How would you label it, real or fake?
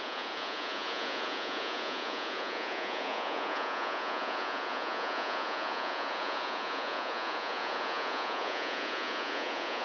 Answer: fake